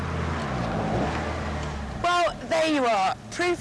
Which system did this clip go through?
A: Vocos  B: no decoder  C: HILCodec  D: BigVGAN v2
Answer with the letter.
B